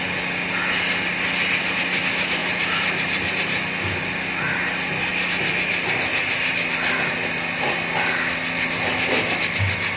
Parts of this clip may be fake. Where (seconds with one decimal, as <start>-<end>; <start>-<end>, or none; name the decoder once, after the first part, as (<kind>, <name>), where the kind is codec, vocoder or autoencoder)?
2.4-3.3 (vocoder, BigVGAN v2)